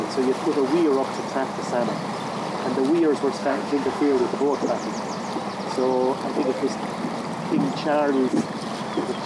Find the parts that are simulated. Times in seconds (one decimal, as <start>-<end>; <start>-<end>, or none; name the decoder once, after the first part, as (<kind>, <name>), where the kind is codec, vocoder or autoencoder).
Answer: 3.4-4.4 (autoencoder, DAC-VAE)